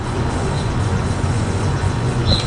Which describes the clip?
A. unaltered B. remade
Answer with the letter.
B